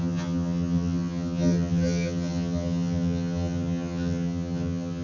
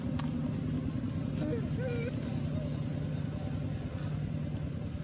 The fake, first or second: first